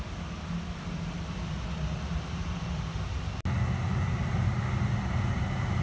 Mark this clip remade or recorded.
recorded